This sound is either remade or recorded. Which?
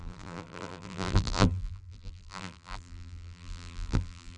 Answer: remade